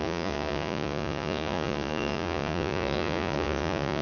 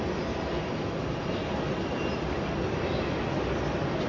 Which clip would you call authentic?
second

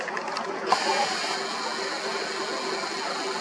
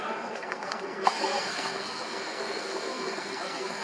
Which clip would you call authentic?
first